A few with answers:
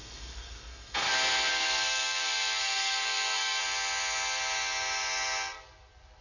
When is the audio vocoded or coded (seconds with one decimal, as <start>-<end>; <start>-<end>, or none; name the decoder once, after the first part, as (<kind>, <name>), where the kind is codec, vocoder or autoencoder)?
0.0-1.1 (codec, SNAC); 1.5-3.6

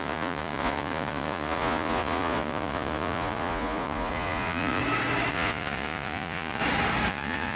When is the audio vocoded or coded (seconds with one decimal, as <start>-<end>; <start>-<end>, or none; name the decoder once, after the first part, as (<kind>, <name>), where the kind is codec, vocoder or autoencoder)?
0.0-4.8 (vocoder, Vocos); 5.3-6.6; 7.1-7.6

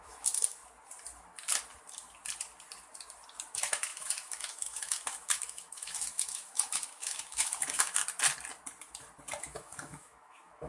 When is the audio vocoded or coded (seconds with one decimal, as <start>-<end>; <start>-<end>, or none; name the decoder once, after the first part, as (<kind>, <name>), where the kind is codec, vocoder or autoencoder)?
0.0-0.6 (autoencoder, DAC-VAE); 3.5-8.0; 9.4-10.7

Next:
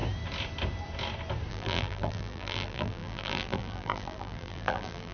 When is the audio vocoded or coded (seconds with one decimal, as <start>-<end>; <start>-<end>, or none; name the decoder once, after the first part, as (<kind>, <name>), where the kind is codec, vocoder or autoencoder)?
1.5-5.1 (vocoder, BigVGAN v2)